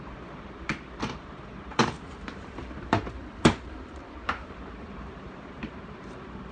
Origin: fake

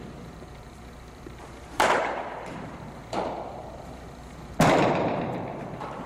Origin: fake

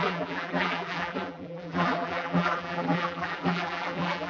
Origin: fake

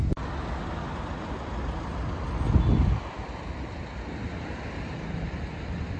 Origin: real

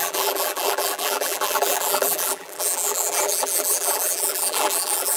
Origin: fake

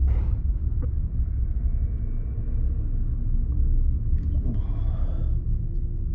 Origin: real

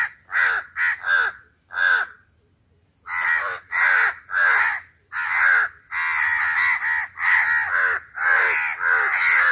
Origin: real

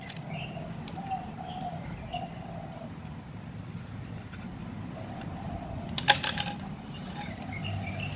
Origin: fake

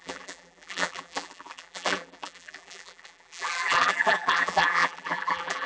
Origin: fake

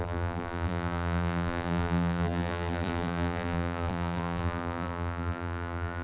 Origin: fake